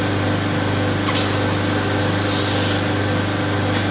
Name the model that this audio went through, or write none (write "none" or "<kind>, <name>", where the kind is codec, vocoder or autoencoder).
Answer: none